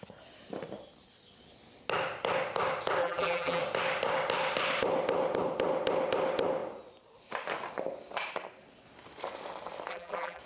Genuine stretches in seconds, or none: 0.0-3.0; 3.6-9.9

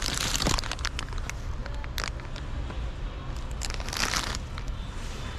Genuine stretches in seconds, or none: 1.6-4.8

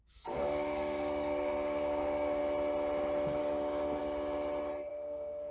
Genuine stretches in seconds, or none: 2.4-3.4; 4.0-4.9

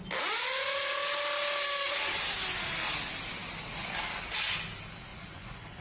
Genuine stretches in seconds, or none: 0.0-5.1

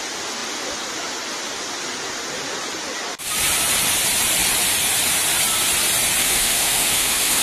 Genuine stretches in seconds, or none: 0.0-6.2

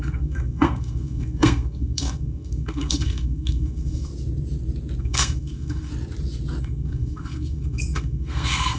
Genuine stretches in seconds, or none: 4.1-5.0; 5.9-6.6

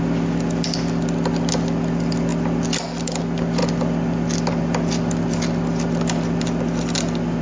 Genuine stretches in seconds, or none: 0.0-7.4

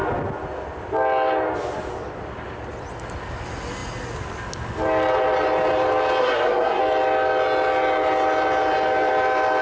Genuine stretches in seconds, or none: 0.0-6.2; 6.8-9.6